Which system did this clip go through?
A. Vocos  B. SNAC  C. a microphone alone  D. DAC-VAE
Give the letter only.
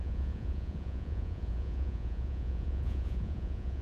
A